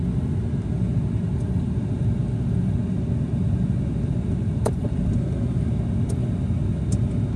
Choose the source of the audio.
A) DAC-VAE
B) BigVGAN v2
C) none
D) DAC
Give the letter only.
C